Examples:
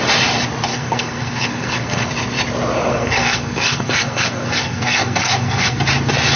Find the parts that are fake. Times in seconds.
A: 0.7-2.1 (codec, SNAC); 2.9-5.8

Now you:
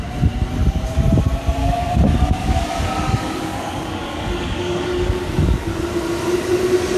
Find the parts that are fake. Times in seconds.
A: 1.6-5.8 (codec, DAC)